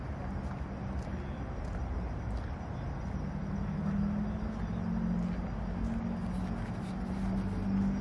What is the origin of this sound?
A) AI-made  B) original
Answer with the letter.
B